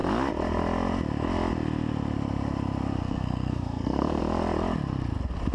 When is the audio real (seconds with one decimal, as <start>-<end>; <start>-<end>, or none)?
0.0-3.0; 4.2-5.5